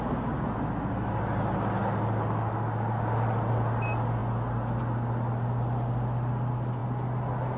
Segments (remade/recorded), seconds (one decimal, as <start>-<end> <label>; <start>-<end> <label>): 0.0-7.6 recorded